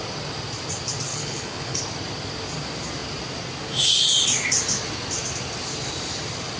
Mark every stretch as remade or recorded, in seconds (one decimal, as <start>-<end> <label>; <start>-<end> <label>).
0.0-1.1 recorded; 1.1-1.8 remade; 1.8-6.6 recorded